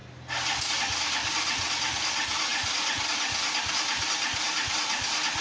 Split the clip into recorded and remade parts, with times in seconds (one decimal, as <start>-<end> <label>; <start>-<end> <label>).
0.0-5.4 recorded